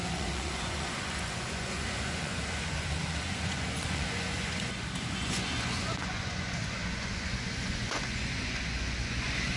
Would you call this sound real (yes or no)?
no